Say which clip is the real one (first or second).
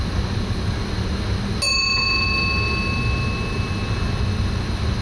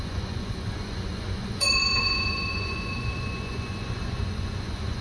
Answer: first